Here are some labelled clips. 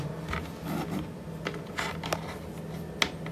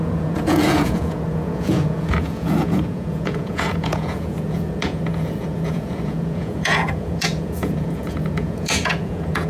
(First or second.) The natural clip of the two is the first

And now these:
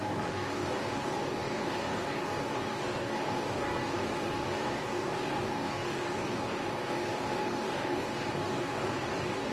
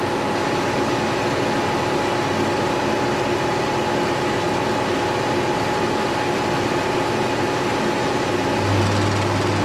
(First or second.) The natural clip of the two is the second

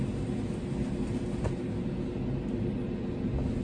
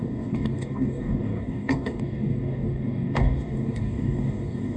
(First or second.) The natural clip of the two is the first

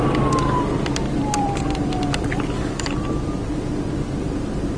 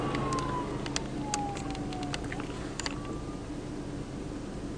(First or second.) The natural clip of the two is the second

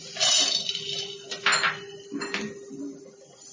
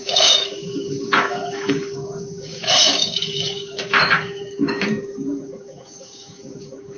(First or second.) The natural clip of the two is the first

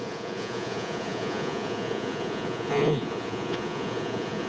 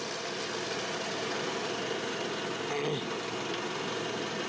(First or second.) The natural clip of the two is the second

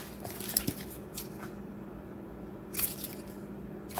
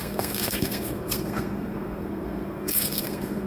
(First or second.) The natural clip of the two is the first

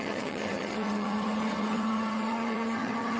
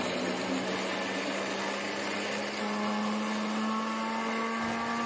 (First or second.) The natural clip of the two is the second